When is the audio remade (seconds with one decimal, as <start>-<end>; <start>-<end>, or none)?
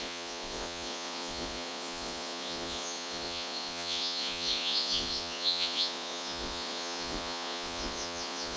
0.0-8.6